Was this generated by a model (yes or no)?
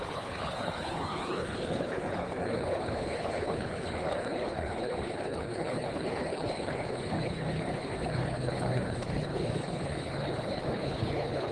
yes